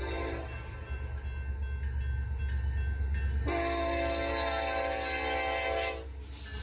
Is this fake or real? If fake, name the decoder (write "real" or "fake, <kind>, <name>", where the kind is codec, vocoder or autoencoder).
real